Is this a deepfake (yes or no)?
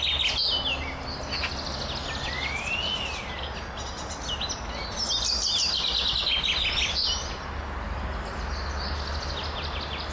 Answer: no